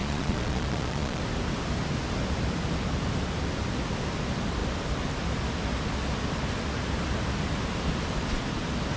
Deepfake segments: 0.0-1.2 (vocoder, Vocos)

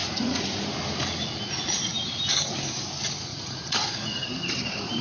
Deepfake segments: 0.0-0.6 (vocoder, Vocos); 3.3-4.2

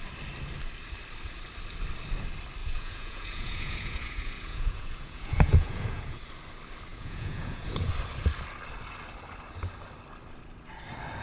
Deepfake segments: 2.6-6.2 (vocoder, Vocos); 6.9-7.9

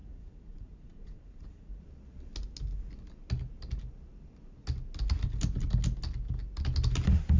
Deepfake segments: 0.0-1.8 (vocoder, Vocos)